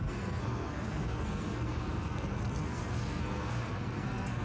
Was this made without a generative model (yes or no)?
no